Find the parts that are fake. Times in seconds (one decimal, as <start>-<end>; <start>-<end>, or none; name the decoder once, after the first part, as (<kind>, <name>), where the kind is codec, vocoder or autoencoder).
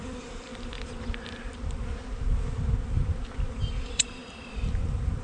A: 0.0-0.5 (vocoder, BigVGAN v2); 3.5-4.2